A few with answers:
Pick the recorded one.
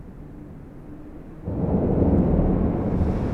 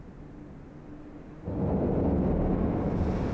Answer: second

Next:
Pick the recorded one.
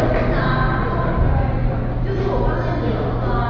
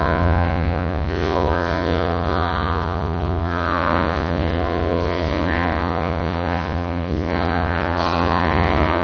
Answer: first